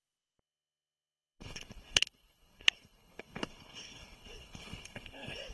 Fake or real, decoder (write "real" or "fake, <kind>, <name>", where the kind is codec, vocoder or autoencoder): fake, codec, HILCodec